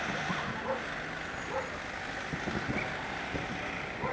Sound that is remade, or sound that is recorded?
recorded